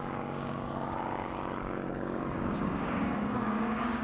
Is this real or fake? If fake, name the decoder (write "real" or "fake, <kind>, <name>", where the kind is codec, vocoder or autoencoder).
fake, codec, DAC